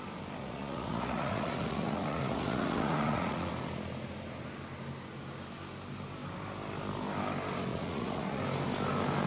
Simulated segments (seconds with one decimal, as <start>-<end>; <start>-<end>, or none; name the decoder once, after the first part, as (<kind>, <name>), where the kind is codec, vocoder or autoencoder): 0.4-3.5 (vocoder, Vocos); 7.7-8.4